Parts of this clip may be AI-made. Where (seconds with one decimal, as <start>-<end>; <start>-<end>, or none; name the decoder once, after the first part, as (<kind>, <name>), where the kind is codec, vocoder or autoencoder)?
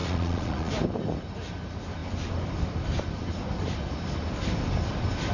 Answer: 0.0-0.7 (vocoder, Vocos)